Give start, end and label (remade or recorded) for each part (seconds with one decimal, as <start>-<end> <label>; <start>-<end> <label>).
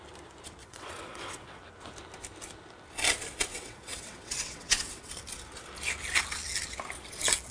0.0-0.6 recorded; 0.6-1.6 remade; 1.6-3.5 recorded; 3.5-5.1 remade; 5.1-7.5 recorded